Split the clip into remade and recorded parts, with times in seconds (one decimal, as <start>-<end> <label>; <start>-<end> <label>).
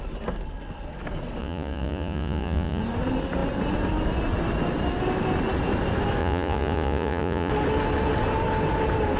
0.0-1.4 recorded; 1.4-2.8 remade; 2.8-6.2 recorded; 6.2-7.5 remade; 7.5-9.2 recorded